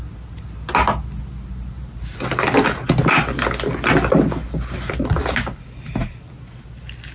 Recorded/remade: recorded